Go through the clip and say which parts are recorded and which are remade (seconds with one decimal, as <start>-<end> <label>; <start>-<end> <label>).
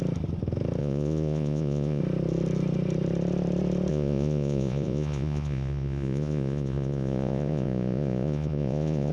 0.0-0.8 recorded; 0.8-2.0 remade; 2.0-3.9 recorded; 3.9-9.1 remade